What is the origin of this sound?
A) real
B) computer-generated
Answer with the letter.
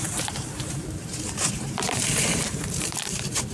B